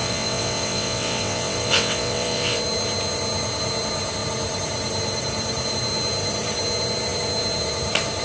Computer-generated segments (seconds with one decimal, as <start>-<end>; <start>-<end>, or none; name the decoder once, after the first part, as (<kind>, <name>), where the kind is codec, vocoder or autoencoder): 0.0-2.6 (vocoder, WaveNeXt)